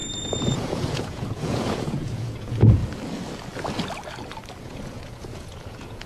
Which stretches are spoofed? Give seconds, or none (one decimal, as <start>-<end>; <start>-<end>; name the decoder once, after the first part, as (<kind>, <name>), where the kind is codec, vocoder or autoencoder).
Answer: 0.0-2.8 (vocoder, Vocos); 4.6-6.1